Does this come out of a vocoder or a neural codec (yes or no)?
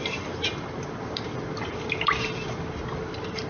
no